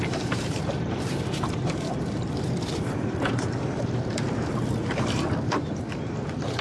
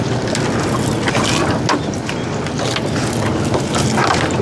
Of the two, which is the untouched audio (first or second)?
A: second